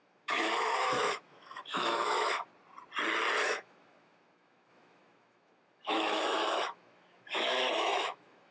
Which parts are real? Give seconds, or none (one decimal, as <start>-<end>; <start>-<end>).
2.5-3.4